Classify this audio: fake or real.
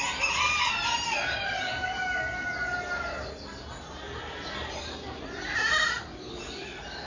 real